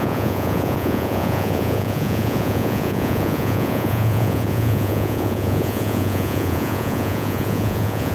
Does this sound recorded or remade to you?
remade